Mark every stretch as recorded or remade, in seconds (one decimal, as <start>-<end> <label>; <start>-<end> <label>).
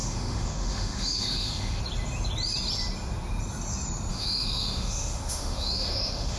0.0-1.8 remade; 1.8-4.1 recorded; 4.1-6.4 remade